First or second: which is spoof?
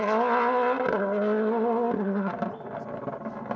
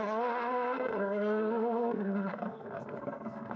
second